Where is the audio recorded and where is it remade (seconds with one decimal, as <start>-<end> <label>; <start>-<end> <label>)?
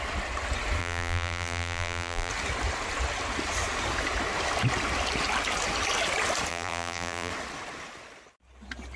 0.0-0.8 recorded; 0.8-2.3 remade; 2.3-6.5 recorded; 6.5-7.3 remade; 7.3-9.0 recorded